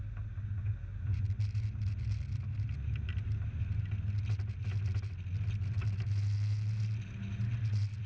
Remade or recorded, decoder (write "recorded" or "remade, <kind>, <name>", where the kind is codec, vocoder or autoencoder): recorded